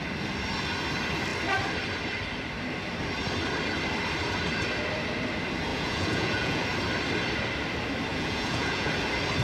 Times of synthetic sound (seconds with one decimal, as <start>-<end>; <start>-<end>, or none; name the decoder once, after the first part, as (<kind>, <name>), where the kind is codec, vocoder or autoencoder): 5.7-6.6 (vocoder, Vocos); 8.1-8.9